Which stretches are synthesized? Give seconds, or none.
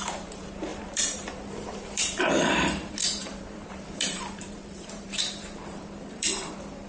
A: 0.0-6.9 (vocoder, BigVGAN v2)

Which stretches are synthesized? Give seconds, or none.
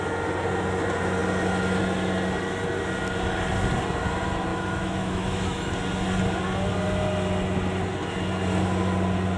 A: 4.5-5.7 (autoencoder, DAC-VAE)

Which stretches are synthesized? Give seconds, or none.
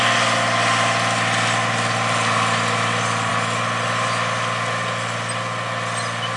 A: none